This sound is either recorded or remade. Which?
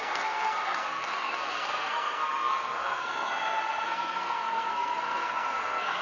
remade